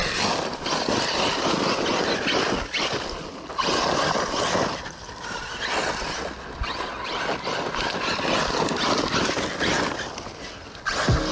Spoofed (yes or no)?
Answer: no